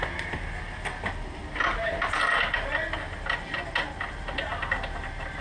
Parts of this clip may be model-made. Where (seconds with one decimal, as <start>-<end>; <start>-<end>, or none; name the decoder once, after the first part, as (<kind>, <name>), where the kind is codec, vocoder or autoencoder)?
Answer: none